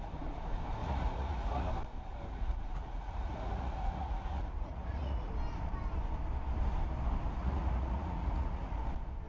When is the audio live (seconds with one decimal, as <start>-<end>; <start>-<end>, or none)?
0.0-0.8; 1.7-2.3; 5.3-7.4; 8.8-9.3